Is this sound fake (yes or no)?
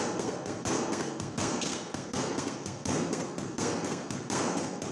yes